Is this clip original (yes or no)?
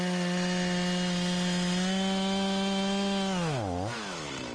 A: yes